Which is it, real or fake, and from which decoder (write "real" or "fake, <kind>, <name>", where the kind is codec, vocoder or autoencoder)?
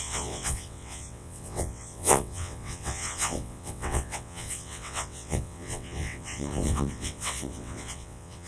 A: fake, vocoder, WaveNeXt